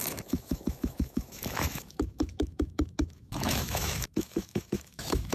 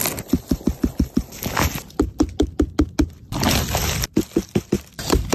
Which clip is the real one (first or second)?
second